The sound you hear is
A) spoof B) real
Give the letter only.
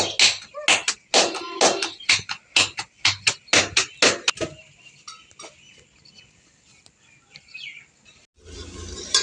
B